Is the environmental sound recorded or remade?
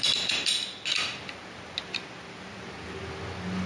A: recorded